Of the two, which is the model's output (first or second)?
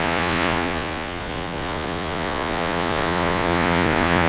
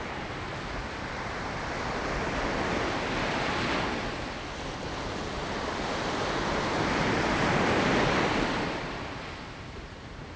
first